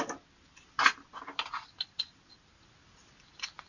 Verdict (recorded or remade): recorded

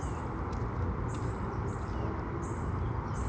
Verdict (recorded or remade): recorded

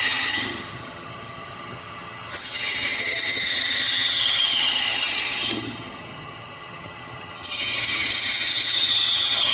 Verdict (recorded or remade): remade